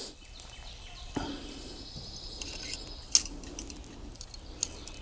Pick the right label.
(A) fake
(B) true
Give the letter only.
B